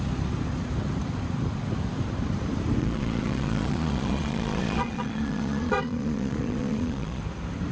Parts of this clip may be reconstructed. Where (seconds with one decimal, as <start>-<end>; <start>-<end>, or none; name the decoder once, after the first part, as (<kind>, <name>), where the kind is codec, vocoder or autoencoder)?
2.8-7.2 (vocoder, Vocos)